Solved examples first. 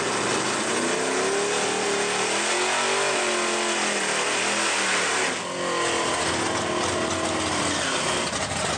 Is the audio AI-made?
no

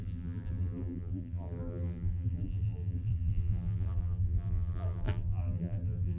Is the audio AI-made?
yes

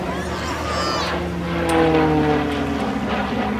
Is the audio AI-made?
no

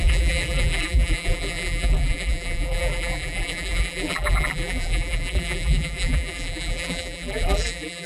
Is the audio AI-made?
yes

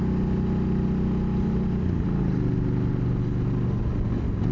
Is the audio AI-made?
no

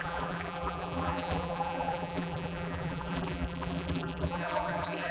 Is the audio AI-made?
yes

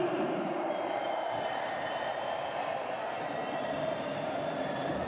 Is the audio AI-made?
yes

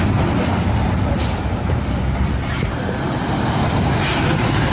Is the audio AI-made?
yes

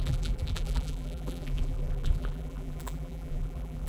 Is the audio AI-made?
yes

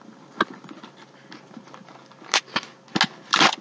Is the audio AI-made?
no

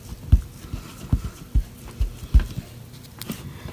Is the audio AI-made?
yes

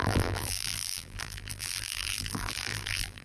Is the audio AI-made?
yes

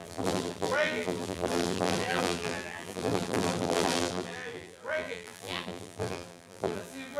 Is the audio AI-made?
yes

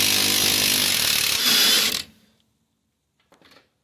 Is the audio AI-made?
no